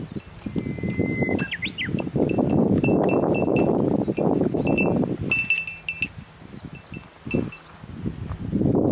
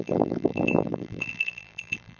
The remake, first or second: second